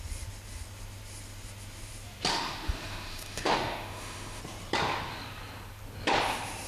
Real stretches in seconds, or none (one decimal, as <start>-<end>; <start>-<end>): 0.0-2.3; 4.4-6.7